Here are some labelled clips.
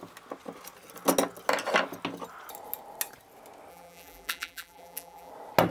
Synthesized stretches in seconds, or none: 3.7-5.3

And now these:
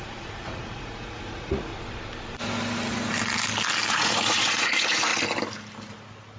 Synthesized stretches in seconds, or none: 0.0-1.7; 3.9-5.1